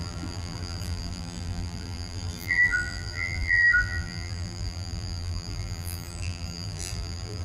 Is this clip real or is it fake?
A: fake